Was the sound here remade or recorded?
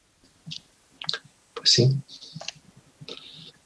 recorded